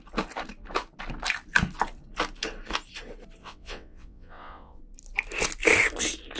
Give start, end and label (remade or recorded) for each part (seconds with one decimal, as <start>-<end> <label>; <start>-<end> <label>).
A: 0.0-3.4 recorded; 3.4-4.8 remade; 4.8-6.4 recorded